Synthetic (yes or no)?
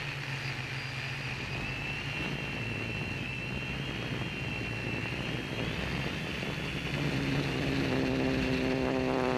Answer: no